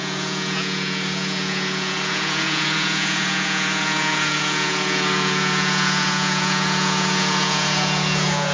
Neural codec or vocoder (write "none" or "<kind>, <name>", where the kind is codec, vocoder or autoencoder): vocoder, Vocos